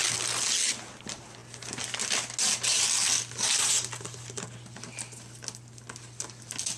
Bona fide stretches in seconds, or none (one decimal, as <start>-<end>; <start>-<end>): 0.0-6.8